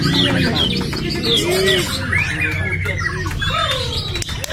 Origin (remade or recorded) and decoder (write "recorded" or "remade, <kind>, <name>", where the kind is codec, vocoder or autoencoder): recorded